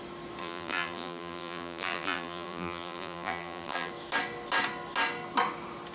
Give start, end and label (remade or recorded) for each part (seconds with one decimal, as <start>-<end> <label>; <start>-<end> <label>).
0.0-0.4 recorded; 0.4-3.9 remade; 3.9-5.9 recorded